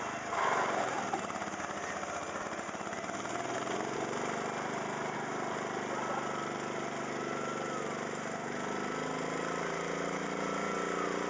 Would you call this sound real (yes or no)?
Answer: yes